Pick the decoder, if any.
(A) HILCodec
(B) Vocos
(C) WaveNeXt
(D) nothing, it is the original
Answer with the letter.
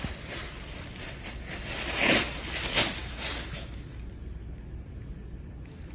D